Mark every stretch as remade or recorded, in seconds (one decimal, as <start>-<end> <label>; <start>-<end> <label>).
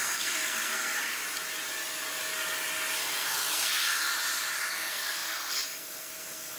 0.0-1.2 remade; 1.2-3.0 recorded; 3.0-4.1 remade; 4.1-4.7 recorded; 4.7-6.6 remade